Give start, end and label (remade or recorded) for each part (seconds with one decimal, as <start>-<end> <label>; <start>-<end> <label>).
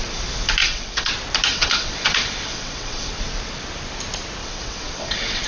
0.0-0.6 recorded; 0.6-1.1 remade; 1.1-1.5 recorded; 1.5-3.1 remade; 3.1-4.4 recorded; 4.4-5.5 remade